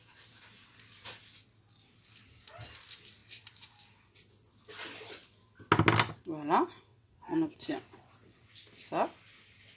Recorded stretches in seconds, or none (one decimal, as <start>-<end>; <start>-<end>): 0.0-6.9; 8.5-9.8